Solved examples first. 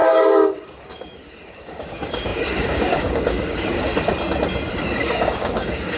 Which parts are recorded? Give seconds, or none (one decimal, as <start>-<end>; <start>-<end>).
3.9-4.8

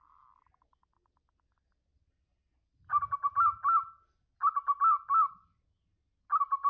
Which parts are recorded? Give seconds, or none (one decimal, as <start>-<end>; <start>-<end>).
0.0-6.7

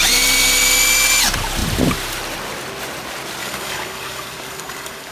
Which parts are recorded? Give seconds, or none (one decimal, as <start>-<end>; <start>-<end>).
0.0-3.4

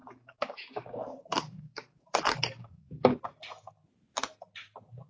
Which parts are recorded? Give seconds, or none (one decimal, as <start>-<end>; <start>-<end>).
3.1-5.1

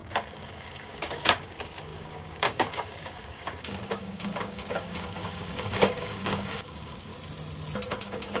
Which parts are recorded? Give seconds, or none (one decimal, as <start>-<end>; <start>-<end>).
7.1-7.9

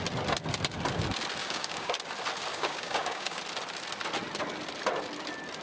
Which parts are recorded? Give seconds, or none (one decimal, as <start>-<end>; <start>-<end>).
0.0-1.4; 1.9-2.5; 3.4-5.6

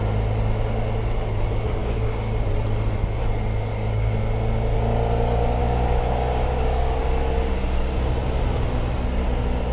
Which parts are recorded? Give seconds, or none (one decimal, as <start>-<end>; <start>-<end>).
0.0-1.8; 2.5-3.7; 4.2-5.6; 7.0-9.7

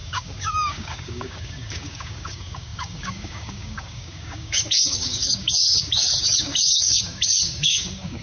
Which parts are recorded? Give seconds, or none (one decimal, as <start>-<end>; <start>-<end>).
none